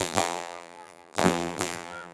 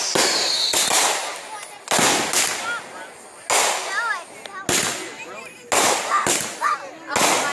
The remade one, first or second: first